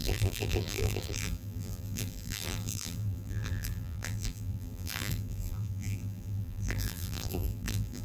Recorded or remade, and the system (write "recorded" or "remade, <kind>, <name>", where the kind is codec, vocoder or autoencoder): remade, vocoder, BigVGAN v2